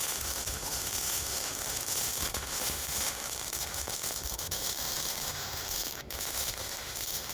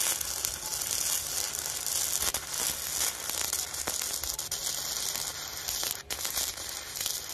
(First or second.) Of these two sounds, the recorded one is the second